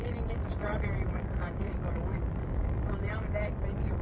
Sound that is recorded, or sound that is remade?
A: recorded